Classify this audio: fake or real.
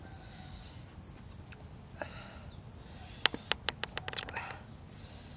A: real